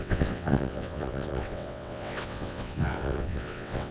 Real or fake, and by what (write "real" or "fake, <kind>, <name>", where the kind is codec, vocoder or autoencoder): fake, vocoder, WaveNeXt